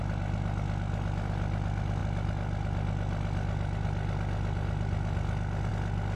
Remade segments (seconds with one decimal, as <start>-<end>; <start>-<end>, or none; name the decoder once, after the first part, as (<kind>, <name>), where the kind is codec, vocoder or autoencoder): none